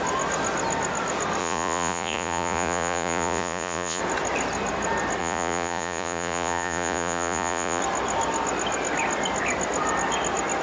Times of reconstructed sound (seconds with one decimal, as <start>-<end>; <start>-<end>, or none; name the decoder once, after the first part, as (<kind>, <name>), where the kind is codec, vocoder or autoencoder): 1.4-4.0 (vocoder, Vocos); 5.2-7.8